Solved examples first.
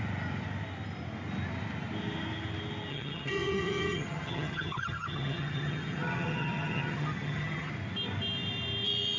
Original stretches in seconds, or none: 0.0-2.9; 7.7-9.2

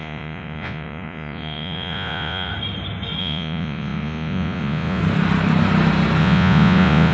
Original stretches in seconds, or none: 2.5-3.2; 5.0-6.2

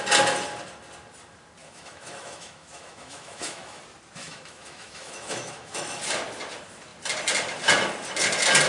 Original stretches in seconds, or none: 0.0-1.6; 3.8-4.2; 6.0-8.7